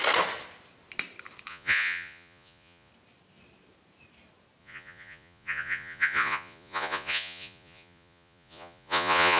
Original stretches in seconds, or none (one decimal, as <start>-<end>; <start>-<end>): 0.0-1.5; 2.9-4.6